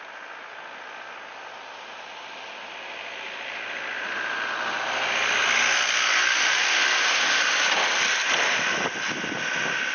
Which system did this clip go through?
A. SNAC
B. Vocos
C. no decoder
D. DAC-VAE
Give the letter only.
C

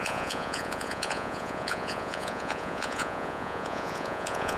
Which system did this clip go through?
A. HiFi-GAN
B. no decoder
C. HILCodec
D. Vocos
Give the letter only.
D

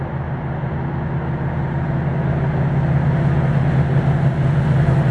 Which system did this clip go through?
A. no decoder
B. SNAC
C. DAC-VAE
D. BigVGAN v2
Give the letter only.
A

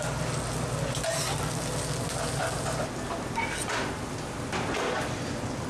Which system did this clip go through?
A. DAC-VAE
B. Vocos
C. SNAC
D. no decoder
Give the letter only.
D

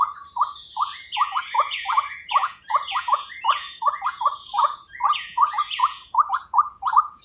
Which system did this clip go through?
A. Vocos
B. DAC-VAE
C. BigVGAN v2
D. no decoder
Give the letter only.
A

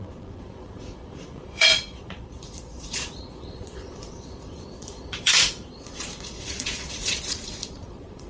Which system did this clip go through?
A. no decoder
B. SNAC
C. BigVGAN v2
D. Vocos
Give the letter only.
D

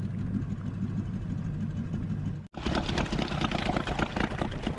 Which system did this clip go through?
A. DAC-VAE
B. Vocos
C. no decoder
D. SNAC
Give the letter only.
C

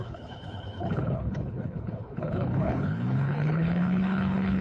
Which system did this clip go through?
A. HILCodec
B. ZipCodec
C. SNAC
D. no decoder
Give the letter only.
A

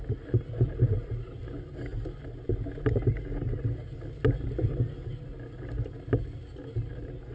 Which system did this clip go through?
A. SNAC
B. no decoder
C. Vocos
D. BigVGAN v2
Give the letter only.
B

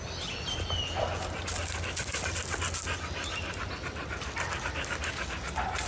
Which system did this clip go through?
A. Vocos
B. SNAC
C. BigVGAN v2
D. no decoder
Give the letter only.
D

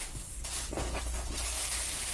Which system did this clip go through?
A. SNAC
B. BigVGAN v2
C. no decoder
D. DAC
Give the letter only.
C